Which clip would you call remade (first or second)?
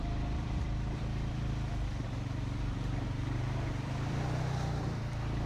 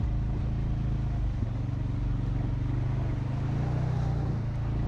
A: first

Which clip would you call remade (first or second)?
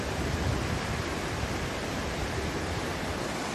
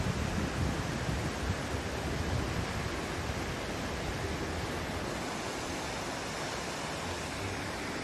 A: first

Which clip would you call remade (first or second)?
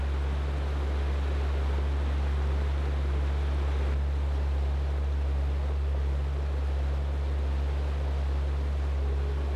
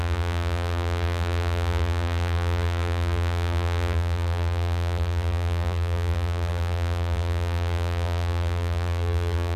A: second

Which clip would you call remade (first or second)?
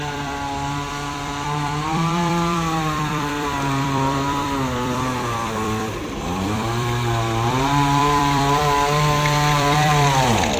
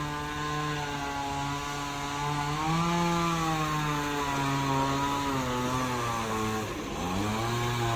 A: first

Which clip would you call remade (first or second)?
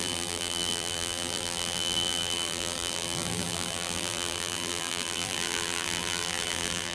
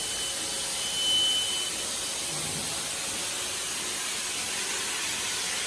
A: first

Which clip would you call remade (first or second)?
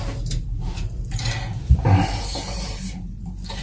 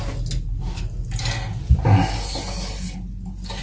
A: first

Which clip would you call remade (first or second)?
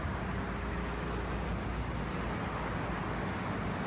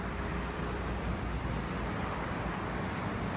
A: second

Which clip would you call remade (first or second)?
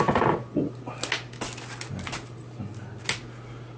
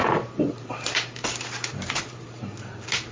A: second